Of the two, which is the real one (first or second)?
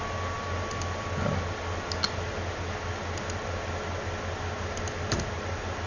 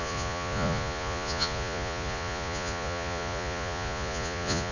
first